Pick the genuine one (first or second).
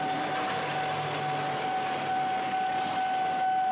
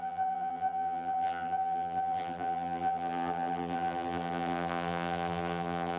first